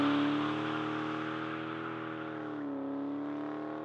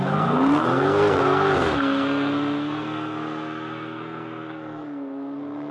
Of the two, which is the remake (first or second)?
second